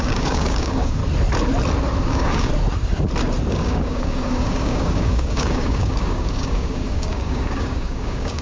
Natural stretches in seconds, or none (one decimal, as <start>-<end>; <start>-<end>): 1.0-2.0; 2.5-3.5